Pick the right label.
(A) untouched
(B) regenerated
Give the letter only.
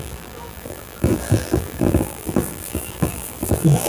B